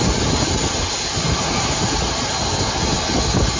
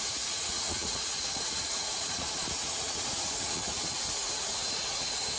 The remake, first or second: second